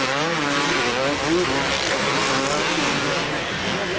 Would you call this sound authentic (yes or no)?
yes